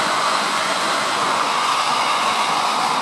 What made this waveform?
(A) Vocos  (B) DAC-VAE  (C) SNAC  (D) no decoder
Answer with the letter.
A